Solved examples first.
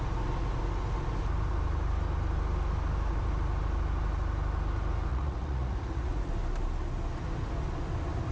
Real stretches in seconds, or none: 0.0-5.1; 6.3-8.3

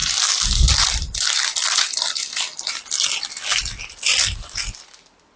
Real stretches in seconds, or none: 0.0-5.4